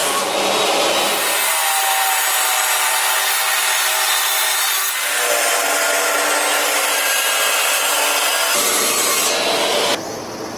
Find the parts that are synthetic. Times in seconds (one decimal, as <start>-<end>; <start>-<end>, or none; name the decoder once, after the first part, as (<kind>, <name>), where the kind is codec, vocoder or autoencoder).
none